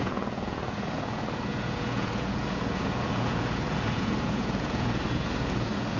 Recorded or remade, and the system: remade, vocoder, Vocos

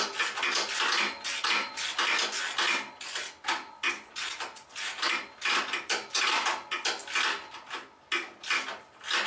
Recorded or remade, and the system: recorded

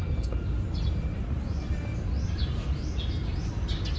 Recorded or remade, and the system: recorded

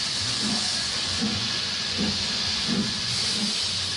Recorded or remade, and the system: remade, vocoder, Vocos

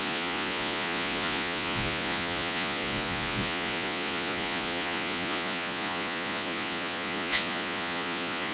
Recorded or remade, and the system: remade, vocoder, Vocos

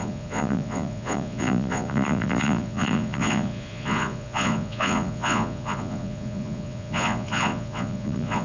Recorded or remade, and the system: remade, vocoder, Vocos